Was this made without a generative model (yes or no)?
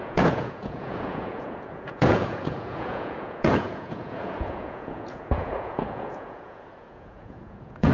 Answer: no